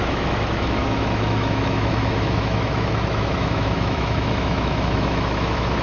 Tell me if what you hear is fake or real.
fake